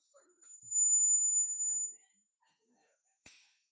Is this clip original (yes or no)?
no